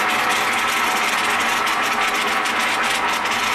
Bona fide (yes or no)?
yes